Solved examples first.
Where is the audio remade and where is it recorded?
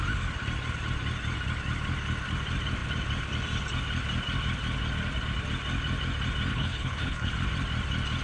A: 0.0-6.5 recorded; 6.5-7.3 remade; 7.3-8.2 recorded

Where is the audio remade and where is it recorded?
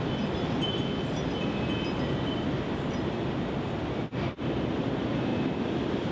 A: 0.0-6.1 recorded